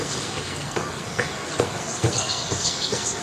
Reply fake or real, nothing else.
fake